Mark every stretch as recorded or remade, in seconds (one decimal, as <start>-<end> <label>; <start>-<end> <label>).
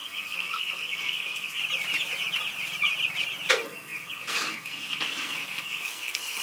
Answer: 0.0-1.6 remade; 1.6-3.5 recorded; 3.5-6.4 remade